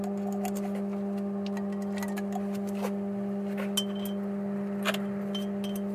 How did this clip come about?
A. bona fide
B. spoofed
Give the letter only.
A